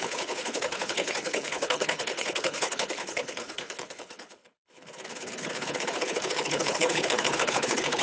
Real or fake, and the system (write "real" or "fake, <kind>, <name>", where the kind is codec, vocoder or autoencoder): fake, codec, HILCodec